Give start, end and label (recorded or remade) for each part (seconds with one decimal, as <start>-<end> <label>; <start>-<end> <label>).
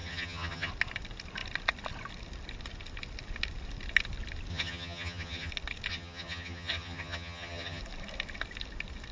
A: 0.0-0.7 remade; 0.7-4.5 recorded; 4.5-5.5 remade; 5.5-5.9 recorded; 5.9-7.8 remade; 7.8-9.1 recorded